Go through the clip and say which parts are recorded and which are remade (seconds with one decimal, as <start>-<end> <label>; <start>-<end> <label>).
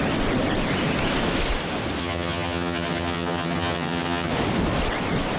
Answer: 0.0-2.0 recorded; 2.0-4.3 remade; 4.3-5.4 recorded